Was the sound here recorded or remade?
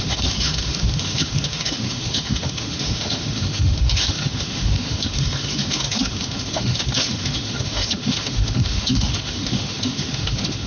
remade